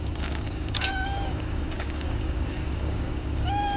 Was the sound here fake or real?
fake